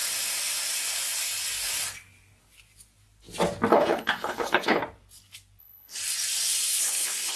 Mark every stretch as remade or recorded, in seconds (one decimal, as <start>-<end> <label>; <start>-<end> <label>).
0.0-3.7 recorded; 3.7-4.8 remade; 4.8-5.6 recorded; 5.6-6.0 remade; 6.0-6.8 recorded; 6.8-7.4 remade